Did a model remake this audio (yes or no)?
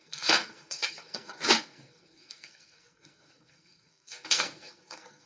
yes